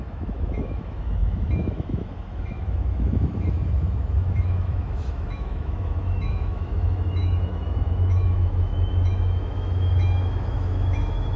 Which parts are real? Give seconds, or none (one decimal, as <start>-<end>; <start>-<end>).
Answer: none